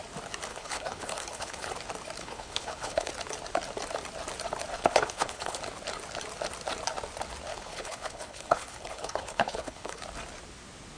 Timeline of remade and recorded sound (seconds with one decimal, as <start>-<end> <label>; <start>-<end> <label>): 0.0-0.5 recorded; 0.5-1.7 remade; 1.7-2.2 recorded; 2.2-3.1 remade; 3.1-4.7 recorded; 4.7-5.6 remade; 5.6-7.5 recorded; 7.5-10.0 remade; 10.0-11.0 recorded